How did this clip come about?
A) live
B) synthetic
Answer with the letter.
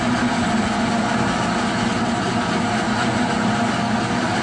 A